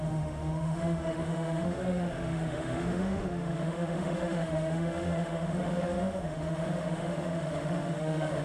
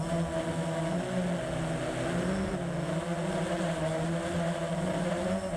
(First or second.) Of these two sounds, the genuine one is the second